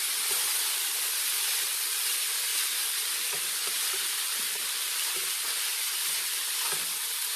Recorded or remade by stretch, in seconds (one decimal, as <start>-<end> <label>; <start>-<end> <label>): 0.0-7.4 recorded